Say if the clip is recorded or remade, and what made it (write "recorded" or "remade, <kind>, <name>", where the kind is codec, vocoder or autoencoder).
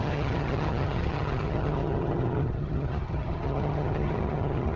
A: remade, vocoder, HiFi-GAN